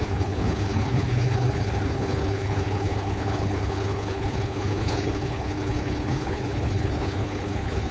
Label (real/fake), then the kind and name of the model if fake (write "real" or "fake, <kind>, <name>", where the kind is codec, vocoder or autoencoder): fake, codec, HILCodec